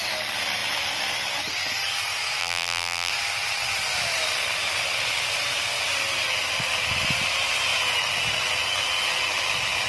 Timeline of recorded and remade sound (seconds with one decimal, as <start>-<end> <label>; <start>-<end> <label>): 0.0-2.4 recorded; 2.4-3.1 remade; 3.1-9.9 recorded